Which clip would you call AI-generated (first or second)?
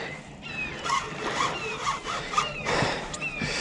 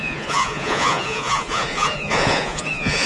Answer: second